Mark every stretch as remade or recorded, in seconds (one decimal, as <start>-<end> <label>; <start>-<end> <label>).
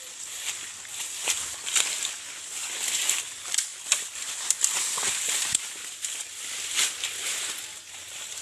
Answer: 0.0-8.4 recorded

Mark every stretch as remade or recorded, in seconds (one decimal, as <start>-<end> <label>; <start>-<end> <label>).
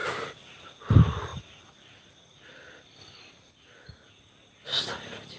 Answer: 0.0-0.6 remade; 0.6-5.4 recorded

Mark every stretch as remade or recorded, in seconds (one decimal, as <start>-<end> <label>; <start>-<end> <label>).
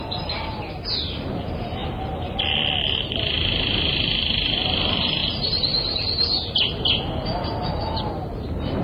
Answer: 0.0-8.8 recorded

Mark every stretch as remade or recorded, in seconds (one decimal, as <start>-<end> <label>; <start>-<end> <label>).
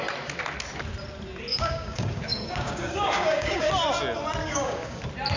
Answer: 0.0-1.5 recorded; 1.5-3.7 remade; 3.7-4.4 recorded; 4.4-5.0 remade; 5.0-5.4 recorded